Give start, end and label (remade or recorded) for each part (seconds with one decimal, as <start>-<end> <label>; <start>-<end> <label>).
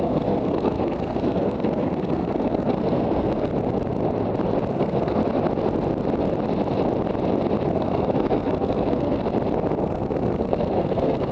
0.0-3.5 remade; 3.5-4.7 recorded; 4.7-5.2 remade; 5.2-7.7 recorded; 7.7-9.2 remade; 9.2-9.8 recorded; 9.8-11.3 remade